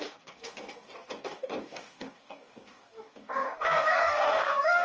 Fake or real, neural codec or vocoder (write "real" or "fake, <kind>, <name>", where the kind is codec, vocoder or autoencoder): fake, codec, DAC